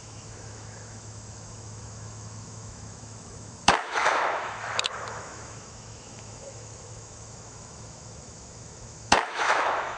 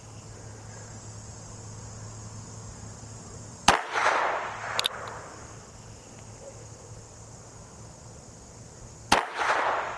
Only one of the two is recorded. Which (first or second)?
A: second